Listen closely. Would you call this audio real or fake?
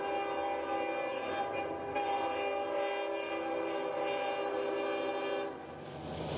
real